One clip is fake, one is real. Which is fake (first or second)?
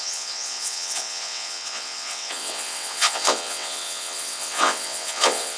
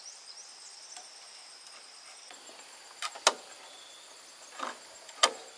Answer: first